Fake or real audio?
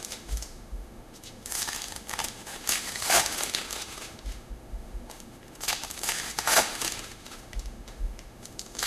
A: fake